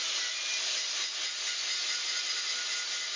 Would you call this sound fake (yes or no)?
no